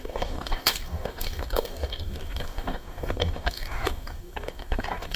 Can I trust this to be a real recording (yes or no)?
no